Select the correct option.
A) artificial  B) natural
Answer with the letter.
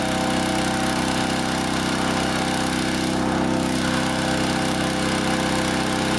B